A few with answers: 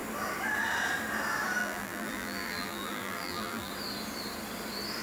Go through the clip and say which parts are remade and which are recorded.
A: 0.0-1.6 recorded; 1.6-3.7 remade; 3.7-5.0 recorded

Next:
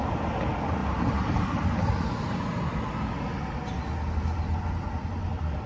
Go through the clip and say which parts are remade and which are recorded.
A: 0.0-0.8 recorded; 0.8-3.8 remade; 3.8-5.7 recorded

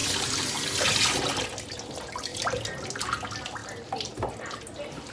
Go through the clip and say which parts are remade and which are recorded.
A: 0.0-3.6 recorded; 3.6-4.6 remade; 4.6-5.1 recorded

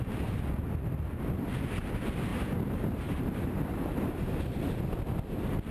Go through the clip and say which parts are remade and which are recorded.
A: 0.0-2.3 recorded; 2.3-4.8 remade; 4.8-5.7 recorded

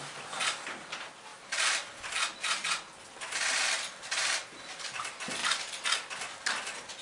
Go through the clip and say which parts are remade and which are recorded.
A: 0.0-1.3 recorded; 1.3-2.1 remade; 2.1-7.0 recorded